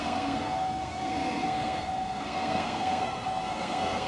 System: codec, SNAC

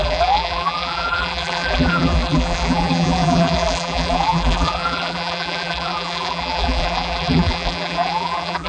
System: vocoder, BigVGAN v2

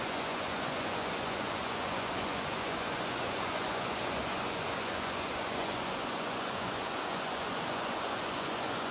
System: vocoder, Vocos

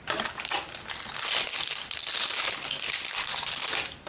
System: none